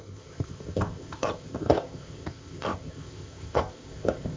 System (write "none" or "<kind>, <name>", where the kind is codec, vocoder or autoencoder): codec, ZipCodec